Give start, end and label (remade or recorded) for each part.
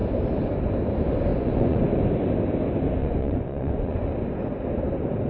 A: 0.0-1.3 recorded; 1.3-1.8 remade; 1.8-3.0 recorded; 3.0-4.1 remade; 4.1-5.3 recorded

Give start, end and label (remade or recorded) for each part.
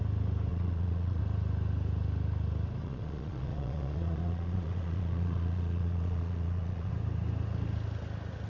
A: 0.0-0.5 recorded; 0.5-1.2 remade; 1.2-2.8 recorded; 2.8-6.9 remade; 6.9-8.5 recorded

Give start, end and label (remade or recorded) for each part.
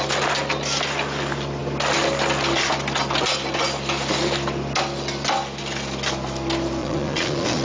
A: 0.0-6.8 recorded; 6.8-7.6 remade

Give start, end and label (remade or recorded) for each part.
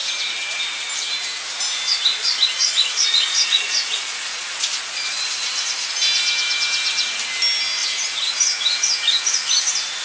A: 0.0-2.1 recorded; 2.1-5.4 remade; 5.4-10.0 recorded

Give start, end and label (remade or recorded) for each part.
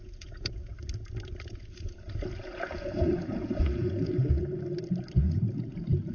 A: 0.0-0.7 remade; 0.7-1.5 recorded; 1.5-4.4 remade; 4.4-5.2 recorded; 5.2-6.1 remade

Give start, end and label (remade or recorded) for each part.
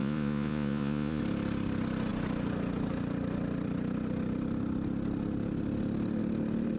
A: 0.0-1.2 remade; 1.2-6.8 recorded